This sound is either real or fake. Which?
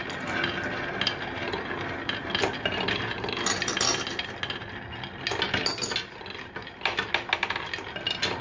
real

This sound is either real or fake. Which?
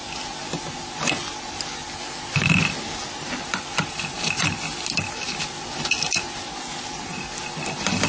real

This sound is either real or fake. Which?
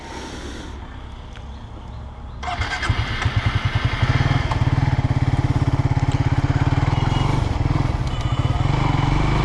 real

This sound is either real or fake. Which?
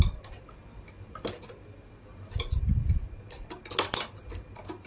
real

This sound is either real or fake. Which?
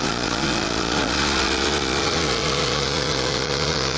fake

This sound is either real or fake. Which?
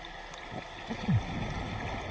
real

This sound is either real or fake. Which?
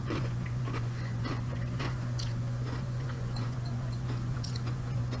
fake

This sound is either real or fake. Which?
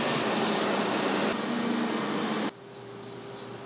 real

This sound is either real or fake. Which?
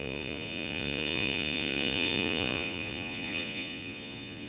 fake